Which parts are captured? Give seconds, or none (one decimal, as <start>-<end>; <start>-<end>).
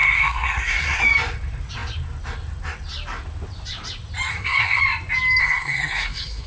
1.0-4.3; 4.8-5.4